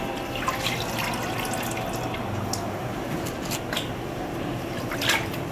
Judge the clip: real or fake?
real